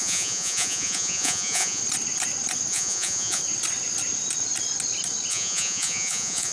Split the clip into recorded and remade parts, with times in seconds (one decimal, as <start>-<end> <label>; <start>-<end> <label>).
0.0-1.8 remade; 1.8-2.7 recorded; 2.7-3.4 remade; 3.4-5.3 recorded; 5.3-6.5 remade